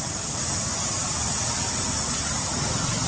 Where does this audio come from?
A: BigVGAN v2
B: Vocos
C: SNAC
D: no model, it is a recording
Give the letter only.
D